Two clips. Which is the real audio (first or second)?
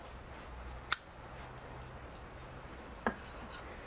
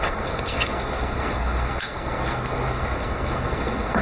first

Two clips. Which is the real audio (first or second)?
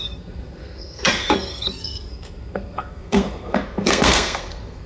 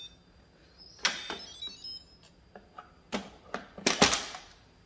second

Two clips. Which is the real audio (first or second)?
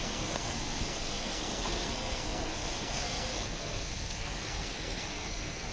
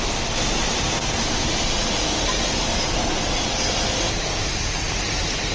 second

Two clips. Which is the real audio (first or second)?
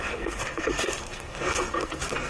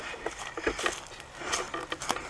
second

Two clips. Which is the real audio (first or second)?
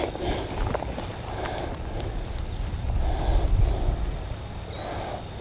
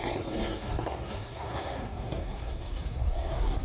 first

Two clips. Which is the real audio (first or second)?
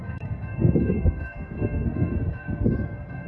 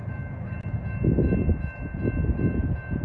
second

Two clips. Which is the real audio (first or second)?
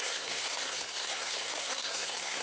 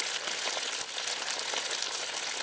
second